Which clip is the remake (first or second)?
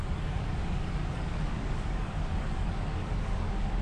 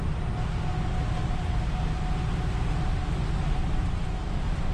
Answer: first